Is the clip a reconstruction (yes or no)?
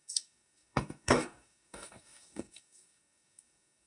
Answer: yes